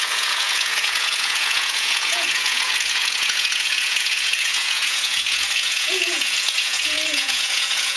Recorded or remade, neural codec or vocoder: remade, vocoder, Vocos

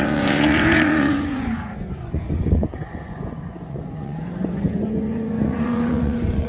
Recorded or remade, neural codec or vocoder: remade, vocoder, Vocos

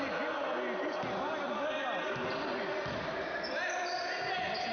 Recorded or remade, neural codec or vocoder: recorded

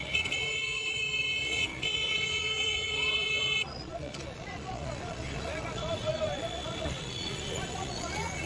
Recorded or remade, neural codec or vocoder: remade, vocoder, Vocos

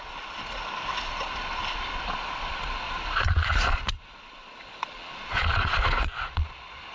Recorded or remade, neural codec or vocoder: remade, vocoder, Vocos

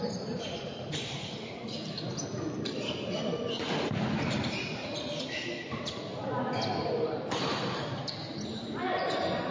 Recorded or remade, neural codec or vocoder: recorded